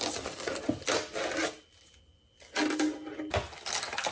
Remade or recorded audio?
recorded